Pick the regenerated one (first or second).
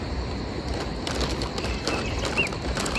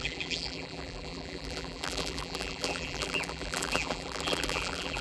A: second